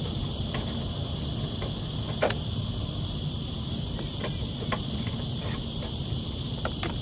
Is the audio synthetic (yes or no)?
no